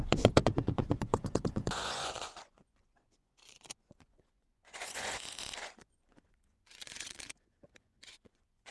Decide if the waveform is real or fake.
fake